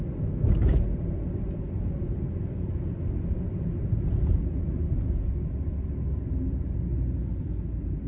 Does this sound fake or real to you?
real